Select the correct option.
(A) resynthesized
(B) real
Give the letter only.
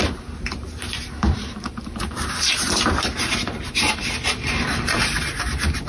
A